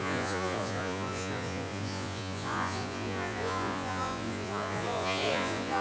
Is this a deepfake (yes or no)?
yes